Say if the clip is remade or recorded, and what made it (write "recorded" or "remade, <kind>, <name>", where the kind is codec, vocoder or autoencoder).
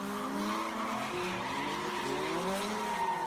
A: recorded